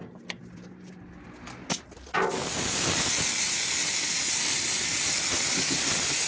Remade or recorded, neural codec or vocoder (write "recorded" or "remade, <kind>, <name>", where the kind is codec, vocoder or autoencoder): recorded